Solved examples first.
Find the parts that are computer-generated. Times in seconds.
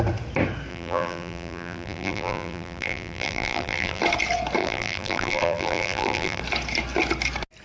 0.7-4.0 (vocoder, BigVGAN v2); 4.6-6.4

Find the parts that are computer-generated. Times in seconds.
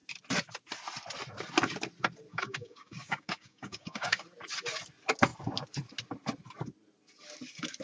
2.3-4.2 (codec, DAC)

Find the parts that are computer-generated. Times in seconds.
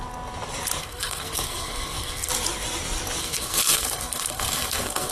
0.8-2.3 (codec, SNAC); 3.2-5.1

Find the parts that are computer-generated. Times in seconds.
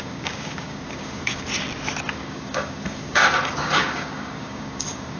0.0-1.5 (codec, DAC); 2.1-5.2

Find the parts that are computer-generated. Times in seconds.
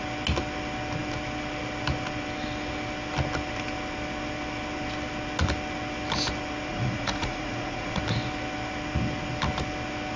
6.7-8.0 (vocoder, Vocos)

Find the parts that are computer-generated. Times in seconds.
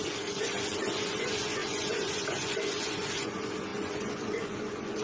0.0-5.0 (vocoder, Vocos)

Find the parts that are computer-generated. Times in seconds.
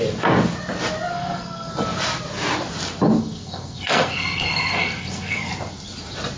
1.1-1.7 (codec, SNAC); 3.2-5.5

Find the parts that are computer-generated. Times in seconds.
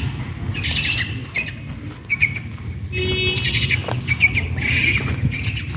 none